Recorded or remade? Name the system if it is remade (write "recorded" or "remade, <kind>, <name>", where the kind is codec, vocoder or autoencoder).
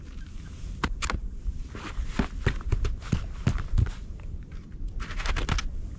recorded